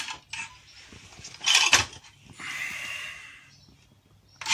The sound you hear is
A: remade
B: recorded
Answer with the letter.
B